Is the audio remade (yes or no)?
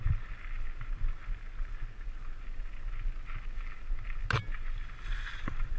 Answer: no